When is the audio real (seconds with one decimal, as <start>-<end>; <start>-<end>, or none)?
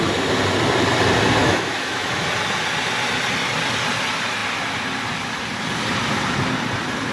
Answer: 0.0-1.4; 2.2-7.1